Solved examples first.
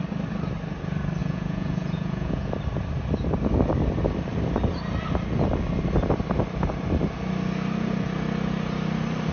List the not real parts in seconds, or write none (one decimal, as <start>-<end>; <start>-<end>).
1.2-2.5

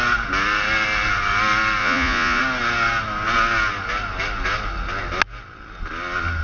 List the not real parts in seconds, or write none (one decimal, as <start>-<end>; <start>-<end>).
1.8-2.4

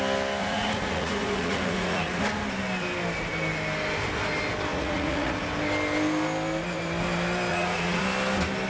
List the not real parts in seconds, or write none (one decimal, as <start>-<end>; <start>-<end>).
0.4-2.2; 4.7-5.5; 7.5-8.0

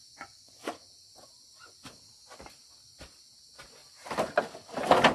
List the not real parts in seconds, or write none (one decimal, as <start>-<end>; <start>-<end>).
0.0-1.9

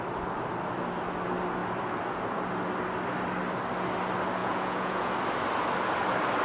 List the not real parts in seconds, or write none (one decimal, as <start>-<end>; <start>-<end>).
4.4-5.1

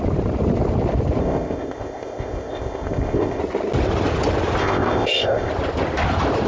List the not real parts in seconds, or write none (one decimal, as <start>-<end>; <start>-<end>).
1.2-3.4; 4.6-5.5